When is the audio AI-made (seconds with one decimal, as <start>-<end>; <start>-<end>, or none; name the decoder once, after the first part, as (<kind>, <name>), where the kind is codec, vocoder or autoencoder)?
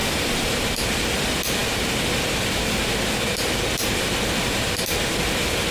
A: 0.0-0.9 (vocoder, BigVGAN v2)